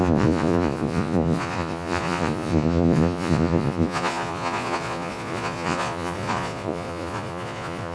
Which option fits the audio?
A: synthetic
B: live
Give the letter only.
A